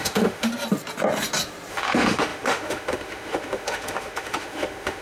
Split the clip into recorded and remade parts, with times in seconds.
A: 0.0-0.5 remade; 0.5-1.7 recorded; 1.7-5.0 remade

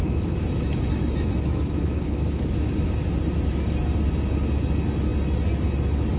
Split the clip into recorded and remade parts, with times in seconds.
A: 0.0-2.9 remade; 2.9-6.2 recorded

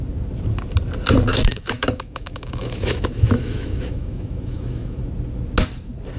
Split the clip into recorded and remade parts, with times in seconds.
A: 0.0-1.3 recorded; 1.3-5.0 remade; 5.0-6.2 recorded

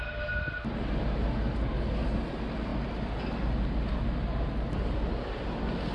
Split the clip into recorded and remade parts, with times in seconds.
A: 0.0-5.9 recorded